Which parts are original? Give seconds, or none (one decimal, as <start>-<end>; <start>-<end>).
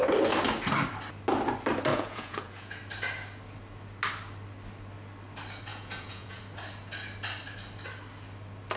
0.0-1.9; 2.8-5.7; 6.4-8.8